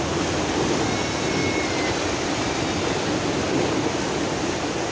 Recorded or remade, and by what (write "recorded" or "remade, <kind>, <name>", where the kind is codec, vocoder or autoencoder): recorded